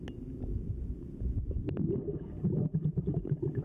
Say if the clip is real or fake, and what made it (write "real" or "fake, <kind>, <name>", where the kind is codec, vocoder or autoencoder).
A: real